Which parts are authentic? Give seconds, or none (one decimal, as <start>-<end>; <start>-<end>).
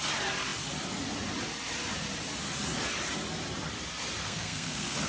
0.0-4.2